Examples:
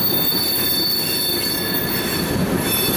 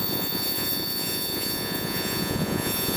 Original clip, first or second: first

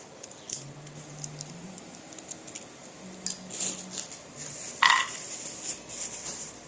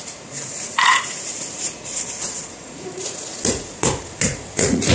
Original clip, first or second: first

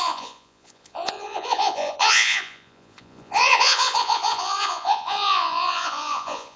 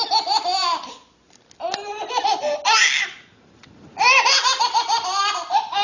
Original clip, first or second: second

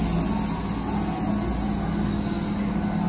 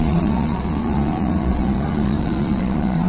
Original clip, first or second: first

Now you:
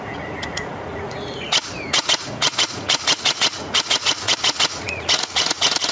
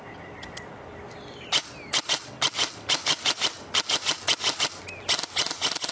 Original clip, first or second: second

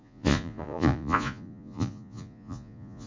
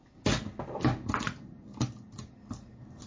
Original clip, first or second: second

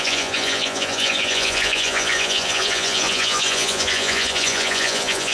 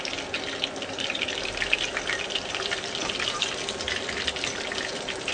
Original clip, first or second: second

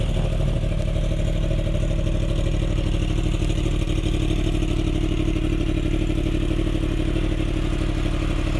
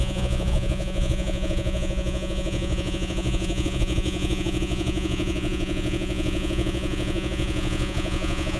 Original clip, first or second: first